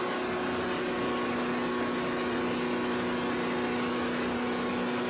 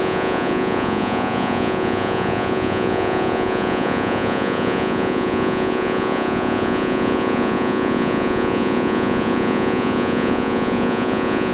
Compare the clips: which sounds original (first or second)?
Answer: first